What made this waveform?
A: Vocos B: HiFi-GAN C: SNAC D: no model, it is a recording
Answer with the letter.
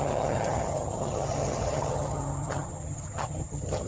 B